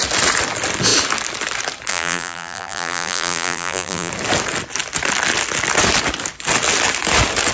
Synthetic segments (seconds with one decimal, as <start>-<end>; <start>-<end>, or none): 1.9-4.1